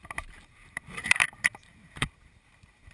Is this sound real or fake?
fake